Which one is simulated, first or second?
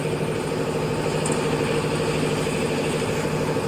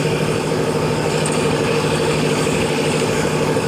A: second